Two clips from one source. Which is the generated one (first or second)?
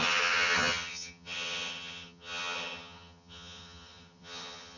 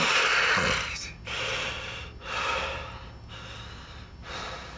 first